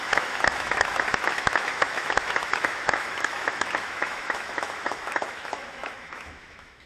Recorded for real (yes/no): no